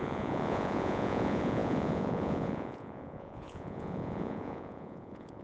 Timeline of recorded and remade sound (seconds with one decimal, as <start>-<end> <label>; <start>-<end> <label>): 0.0-5.4 remade